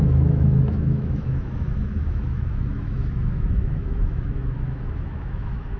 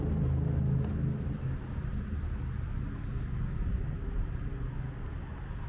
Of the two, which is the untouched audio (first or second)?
second